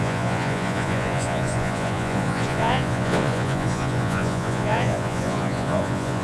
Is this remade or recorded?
remade